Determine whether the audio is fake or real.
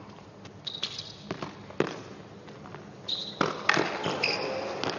real